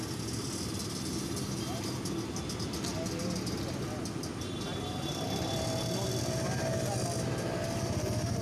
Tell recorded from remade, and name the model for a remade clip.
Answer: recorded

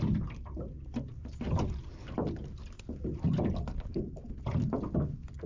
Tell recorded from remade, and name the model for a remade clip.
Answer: recorded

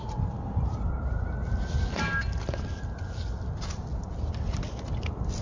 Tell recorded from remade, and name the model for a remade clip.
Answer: recorded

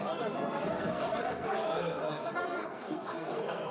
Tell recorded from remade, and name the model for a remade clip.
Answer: remade, codec, SNAC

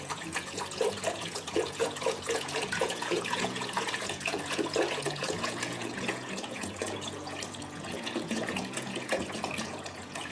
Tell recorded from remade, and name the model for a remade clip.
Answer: remade, vocoder, Vocos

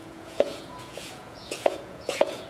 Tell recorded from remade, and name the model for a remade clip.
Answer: remade, vocoder, Vocos